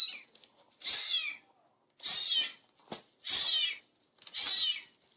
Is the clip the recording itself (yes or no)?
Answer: yes